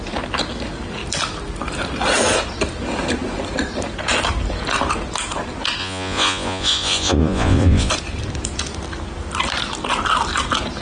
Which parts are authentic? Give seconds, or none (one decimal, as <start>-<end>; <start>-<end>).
0.0-5.8; 7.9-10.8